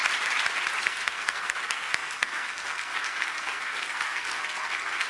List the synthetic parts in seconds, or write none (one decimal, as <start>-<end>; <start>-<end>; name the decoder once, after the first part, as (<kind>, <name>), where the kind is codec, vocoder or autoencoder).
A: 0.8-5.1 (codec, SNAC)